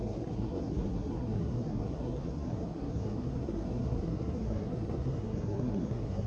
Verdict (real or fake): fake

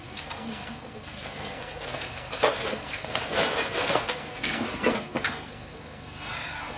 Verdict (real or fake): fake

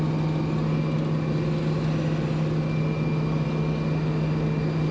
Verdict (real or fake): real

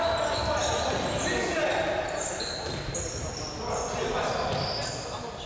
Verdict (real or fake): real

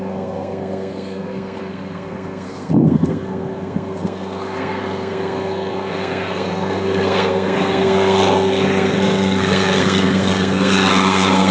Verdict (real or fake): fake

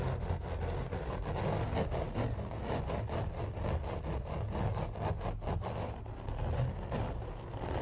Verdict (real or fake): real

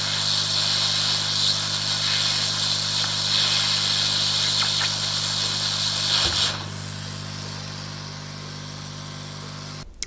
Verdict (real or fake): real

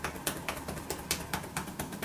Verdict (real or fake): real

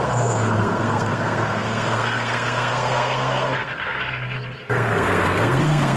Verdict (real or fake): fake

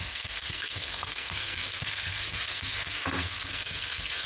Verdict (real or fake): fake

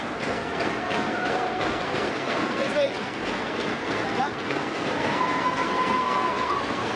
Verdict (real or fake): fake